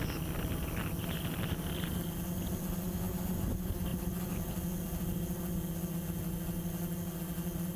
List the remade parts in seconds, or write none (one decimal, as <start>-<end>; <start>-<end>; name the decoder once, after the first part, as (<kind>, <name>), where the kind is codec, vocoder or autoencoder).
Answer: none